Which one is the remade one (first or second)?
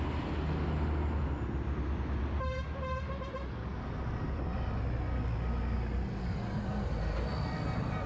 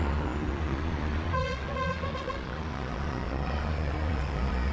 second